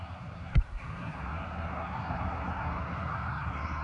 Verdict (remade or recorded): remade